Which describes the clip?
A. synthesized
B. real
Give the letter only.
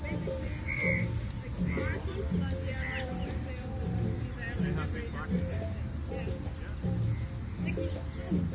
B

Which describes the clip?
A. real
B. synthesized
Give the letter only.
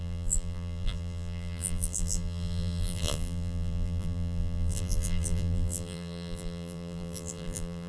B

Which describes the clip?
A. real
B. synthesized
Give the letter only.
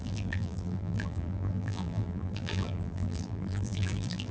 B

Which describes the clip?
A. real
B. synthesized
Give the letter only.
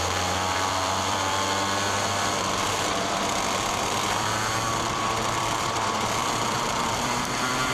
B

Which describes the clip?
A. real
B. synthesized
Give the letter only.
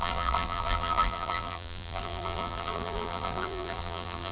B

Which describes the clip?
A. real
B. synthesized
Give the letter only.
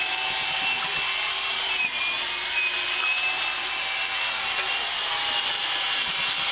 A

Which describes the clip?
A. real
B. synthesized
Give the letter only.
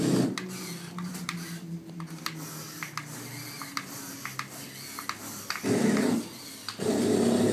A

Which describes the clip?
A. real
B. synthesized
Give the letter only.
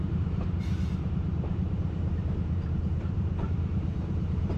B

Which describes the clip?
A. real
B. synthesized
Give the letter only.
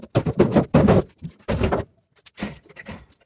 B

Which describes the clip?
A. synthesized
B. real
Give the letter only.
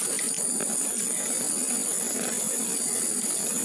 B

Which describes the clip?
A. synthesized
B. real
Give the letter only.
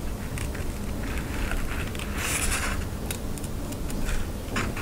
B